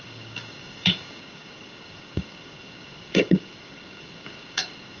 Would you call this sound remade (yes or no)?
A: yes